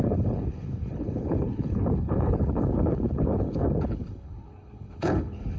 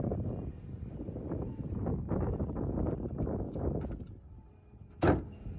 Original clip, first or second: second